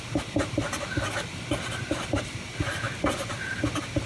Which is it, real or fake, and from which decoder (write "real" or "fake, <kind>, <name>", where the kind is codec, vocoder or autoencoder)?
real